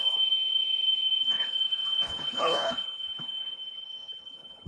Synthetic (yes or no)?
yes